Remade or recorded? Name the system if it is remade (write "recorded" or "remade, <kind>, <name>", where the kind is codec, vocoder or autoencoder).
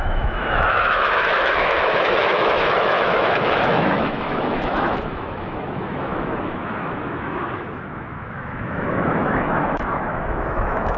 remade, autoencoder, DAC-VAE